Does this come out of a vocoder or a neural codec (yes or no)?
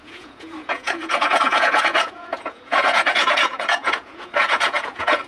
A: yes